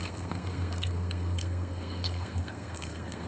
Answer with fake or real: fake